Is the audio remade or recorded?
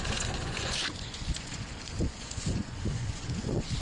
remade